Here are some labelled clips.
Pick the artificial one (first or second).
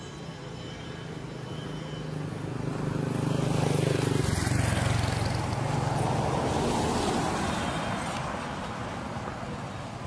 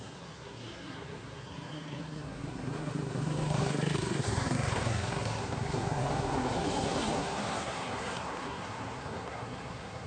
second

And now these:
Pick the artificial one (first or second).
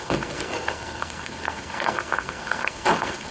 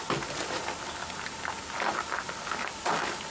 first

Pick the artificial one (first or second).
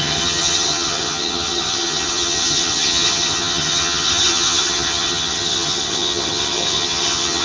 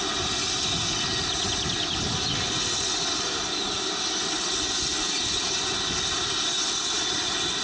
first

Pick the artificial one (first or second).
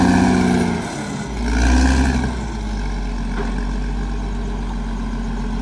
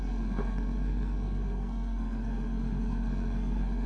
second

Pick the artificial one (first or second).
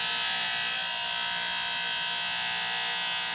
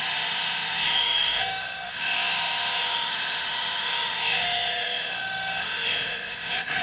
second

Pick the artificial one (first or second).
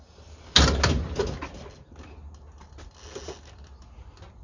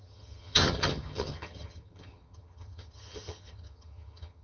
second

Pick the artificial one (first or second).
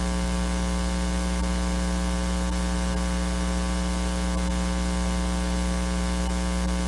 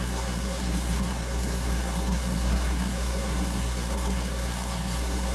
second